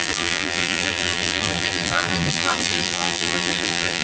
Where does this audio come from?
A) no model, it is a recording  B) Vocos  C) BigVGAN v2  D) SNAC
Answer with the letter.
C